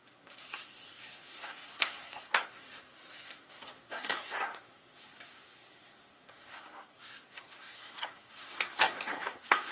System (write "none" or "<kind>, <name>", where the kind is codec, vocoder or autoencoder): codec, SNAC